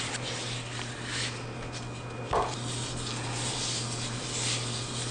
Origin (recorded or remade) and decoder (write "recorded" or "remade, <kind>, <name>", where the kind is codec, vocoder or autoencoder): recorded